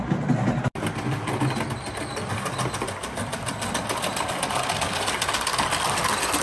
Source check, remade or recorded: recorded